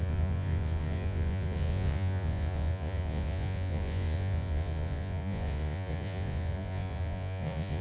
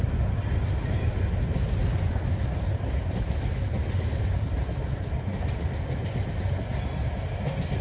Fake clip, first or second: first